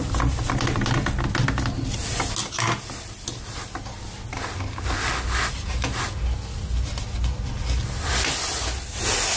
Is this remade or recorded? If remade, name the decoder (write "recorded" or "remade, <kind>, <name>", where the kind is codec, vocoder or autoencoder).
recorded